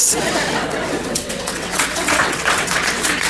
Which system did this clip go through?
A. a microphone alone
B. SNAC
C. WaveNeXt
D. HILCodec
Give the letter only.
C